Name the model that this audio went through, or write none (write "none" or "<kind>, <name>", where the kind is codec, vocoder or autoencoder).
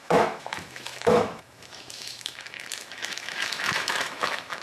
autoencoder, DAC-VAE